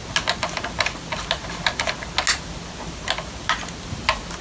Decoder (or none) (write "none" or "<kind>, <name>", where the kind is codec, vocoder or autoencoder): none